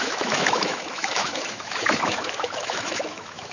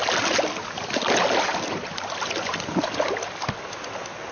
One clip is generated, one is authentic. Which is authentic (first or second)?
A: second